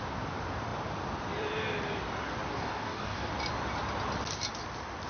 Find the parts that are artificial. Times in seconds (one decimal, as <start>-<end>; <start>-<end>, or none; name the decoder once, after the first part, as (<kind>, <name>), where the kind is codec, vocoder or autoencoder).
2.5-3.3 (codec, DAC)